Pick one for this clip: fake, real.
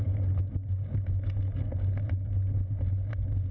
real